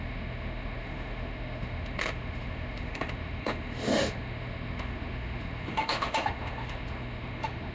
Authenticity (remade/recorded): remade